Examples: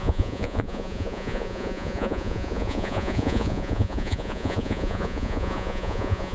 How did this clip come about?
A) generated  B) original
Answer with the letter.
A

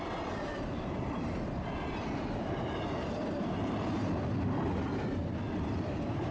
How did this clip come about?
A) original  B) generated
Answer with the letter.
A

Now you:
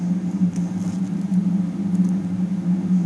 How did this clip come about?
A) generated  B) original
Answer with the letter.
B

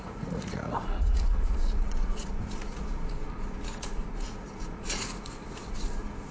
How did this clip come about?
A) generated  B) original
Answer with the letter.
A